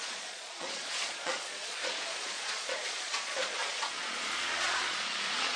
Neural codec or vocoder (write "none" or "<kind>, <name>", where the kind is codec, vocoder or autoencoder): vocoder, Vocos